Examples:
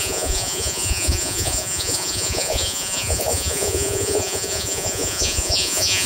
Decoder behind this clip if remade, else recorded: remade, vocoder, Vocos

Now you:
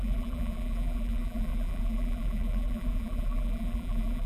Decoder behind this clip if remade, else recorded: remade, vocoder, BigVGAN v2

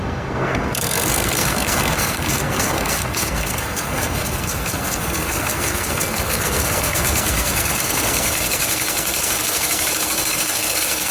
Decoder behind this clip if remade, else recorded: remade, codec, SNAC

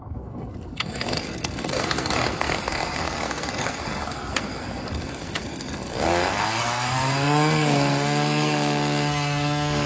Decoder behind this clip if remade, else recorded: remade, codec, SNAC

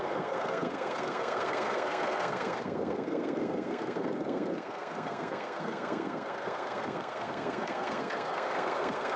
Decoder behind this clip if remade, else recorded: remade, codec, SNAC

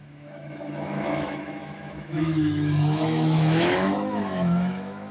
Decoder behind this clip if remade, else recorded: remade, autoencoder, DAC-VAE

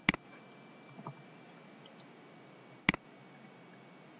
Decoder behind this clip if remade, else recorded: recorded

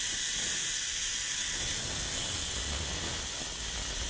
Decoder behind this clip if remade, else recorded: recorded